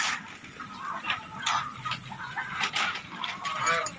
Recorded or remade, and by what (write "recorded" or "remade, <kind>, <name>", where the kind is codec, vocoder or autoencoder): recorded